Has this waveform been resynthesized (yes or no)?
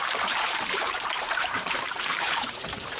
yes